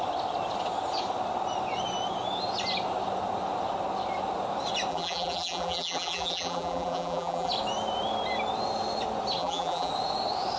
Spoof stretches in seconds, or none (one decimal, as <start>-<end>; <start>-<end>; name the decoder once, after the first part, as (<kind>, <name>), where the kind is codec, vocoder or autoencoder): 4.9-7.5 (vocoder, BigVGAN v2); 9.4-9.9